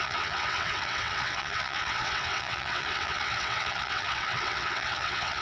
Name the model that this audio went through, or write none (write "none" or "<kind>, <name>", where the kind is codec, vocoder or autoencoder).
vocoder, WaveNeXt